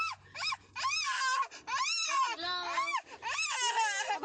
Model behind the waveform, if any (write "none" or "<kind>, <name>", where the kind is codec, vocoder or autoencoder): none